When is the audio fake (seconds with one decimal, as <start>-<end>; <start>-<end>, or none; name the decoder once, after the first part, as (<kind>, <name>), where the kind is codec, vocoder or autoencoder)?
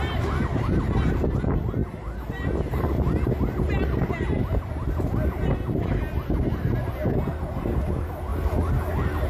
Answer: none